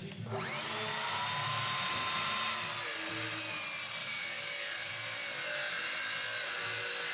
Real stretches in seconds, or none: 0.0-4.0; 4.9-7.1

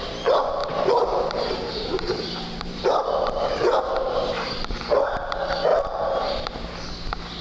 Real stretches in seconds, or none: 0.0-0.6; 4.8-5.7; 6.3-7.4

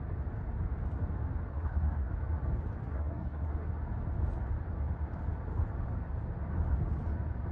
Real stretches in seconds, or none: 0.0-1.5; 2.1-2.8; 3.7-7.5